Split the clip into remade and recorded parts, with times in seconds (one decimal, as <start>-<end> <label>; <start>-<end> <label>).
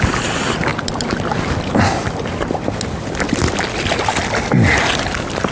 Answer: 0.0-5.5 recorded